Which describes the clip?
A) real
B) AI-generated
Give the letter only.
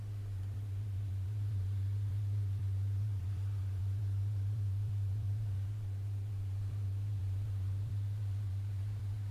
B